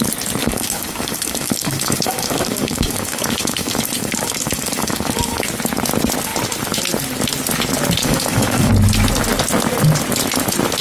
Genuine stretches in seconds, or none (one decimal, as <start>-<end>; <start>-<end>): 0.0-0.4; 5.5-8.0; 8.7-10.8

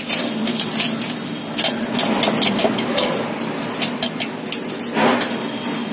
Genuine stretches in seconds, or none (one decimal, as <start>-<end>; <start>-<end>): 0.0-2.6; 3.1-5.9

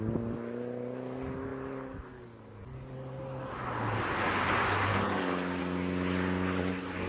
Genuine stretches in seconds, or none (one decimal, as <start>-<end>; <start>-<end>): 0.0-4.9; 5.6-7.1